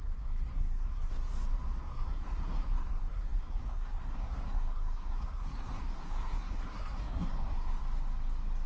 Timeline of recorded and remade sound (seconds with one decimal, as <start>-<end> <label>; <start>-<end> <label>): 0.0-1.1 remade; 1.1-1.8 recorded; 1.8-7.8 remade; 7.8-8.7 recorded